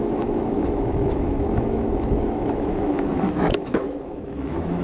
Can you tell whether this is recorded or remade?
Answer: remade